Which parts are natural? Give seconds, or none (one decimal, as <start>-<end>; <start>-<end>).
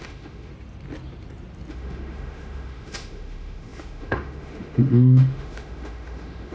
0.5-1.7